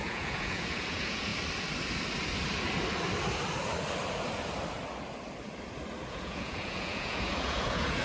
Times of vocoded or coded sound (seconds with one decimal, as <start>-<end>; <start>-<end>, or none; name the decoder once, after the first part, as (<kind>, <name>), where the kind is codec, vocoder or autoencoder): 0.0-1.3 (vocoder, Vocos); 6.1-8.0